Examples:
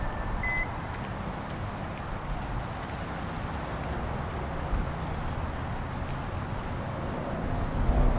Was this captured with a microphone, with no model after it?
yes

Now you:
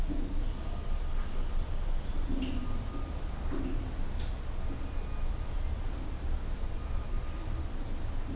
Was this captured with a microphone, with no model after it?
yes